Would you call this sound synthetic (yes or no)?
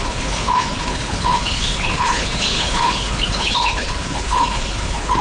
yes